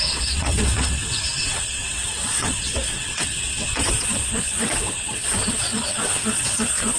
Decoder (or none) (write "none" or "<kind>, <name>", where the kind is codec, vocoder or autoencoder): vocoder, WaveNeXt